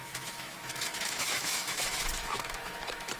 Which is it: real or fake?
fake